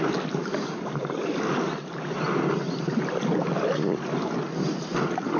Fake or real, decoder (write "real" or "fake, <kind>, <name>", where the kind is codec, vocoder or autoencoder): real